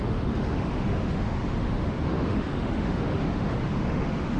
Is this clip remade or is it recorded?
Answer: remade